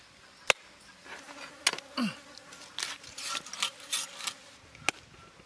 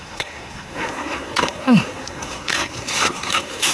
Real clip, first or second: first